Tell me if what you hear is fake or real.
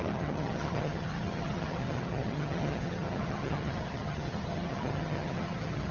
fake